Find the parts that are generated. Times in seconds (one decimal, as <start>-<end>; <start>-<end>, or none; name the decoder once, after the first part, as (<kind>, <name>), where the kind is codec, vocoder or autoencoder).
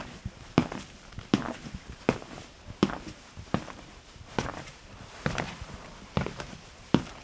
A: 1.4-2.4 (vocoder, BigVGAN v2)